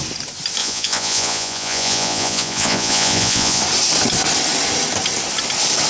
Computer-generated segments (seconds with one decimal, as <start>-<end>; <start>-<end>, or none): 0.6-3.6